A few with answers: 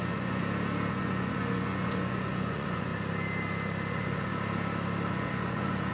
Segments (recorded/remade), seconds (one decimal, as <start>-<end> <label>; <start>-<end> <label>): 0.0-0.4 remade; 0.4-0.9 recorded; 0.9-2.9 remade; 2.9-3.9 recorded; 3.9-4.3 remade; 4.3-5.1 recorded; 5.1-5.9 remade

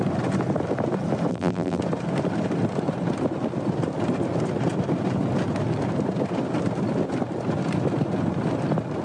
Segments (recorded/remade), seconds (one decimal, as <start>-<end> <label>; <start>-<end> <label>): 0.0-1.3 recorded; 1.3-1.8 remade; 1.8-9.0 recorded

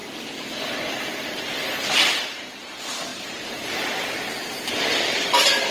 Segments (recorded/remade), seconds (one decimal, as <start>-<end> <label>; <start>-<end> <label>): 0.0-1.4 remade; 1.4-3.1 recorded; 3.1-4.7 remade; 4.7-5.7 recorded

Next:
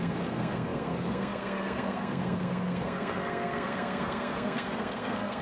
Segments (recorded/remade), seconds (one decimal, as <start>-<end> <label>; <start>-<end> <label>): 0.0-5.4 remade

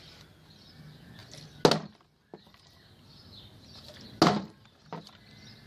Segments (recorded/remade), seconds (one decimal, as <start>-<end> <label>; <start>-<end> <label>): 0.0-5.7 recorded